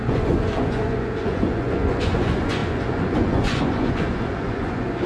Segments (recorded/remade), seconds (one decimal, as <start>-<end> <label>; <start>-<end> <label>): 0.0-5.1 remade

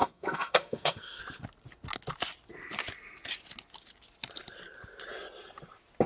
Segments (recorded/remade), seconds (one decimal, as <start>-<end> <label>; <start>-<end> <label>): 0.0-1.2 remade; 1.2-6.1 recorded

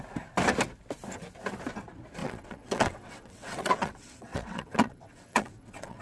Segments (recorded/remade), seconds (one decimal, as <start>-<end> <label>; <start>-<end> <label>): 0.0-2.2 recorded; 2.2-6.0 remade